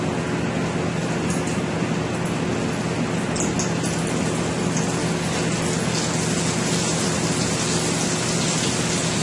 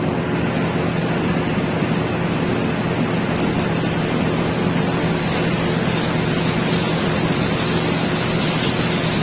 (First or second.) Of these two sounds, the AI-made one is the second